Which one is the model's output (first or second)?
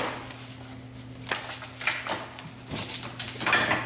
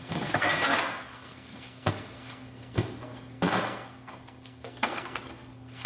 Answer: second